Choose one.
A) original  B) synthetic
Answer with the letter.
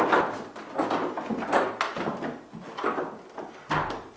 A